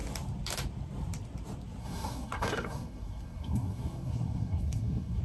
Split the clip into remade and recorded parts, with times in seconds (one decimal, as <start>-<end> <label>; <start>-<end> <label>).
0.0-1.8 recorded; 1.8-5.2 remade